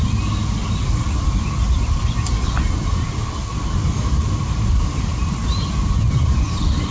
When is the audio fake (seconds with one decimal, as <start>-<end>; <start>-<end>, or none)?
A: none